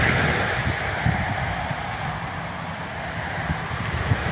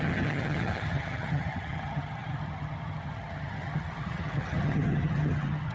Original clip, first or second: first